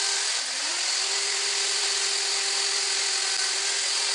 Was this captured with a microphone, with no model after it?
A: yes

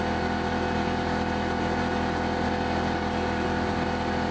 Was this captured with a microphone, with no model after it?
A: yes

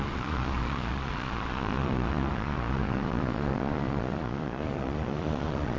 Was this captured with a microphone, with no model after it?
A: no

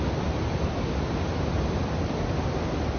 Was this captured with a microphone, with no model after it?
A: yes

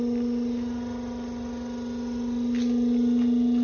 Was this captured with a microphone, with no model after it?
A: yes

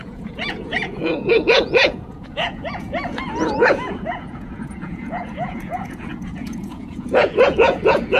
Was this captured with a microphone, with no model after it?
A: no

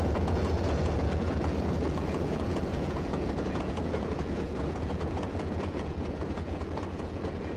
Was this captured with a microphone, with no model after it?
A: no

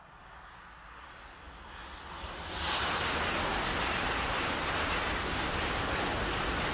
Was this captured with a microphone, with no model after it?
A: yes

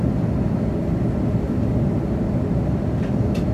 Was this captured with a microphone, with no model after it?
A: yes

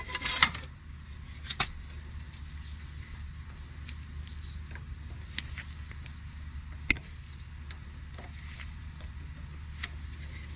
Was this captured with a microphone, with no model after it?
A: yes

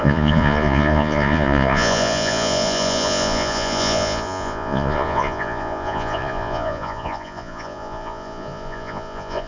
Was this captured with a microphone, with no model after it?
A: no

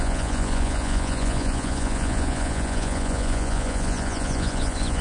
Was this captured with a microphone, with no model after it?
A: no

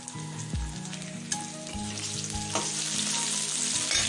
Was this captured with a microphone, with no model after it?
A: yes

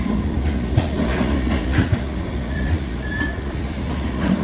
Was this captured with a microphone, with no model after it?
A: no